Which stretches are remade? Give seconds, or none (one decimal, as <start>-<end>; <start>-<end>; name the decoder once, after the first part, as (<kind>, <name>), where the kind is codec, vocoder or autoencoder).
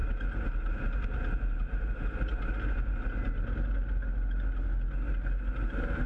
none